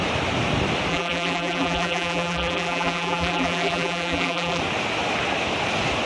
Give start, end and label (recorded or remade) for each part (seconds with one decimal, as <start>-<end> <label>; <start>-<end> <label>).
0.0-0.9 recorded; 0.9-4.6 remade; 4.6-6.1 recorded